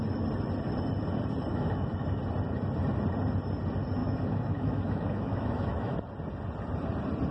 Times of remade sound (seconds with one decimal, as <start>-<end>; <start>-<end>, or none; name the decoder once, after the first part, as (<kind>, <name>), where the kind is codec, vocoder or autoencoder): 1.5-2.2 (autoencoder, DAC-VAE); 4.0-6.0